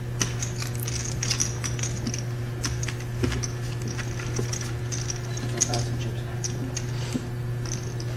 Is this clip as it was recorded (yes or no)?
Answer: yes